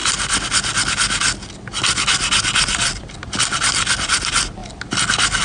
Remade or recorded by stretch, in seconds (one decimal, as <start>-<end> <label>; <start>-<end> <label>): 0.0-5.4 recorded